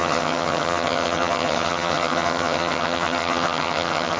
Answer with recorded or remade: remade